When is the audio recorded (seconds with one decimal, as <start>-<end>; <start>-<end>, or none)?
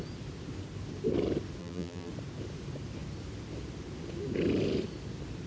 0.0-1.6; 2.1-5.5